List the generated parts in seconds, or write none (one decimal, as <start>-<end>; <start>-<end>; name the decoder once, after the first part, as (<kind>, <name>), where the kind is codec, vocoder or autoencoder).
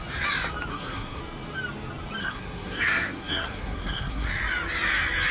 0.7-1.2 (codec, SNAC); 2.2-4.3